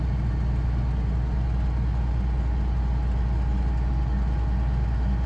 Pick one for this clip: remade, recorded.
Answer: recorded